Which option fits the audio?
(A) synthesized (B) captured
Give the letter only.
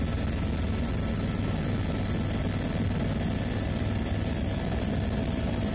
B